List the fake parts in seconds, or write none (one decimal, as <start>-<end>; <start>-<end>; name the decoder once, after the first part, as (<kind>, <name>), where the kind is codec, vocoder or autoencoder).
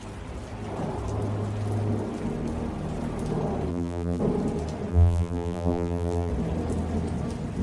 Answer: 3.7-4.2 (vocoder, BigVGAN v2); 4.9-6.3